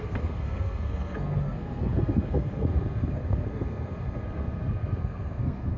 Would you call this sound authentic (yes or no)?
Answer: no